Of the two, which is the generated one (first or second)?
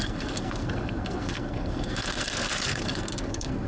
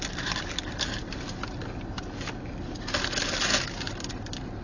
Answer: first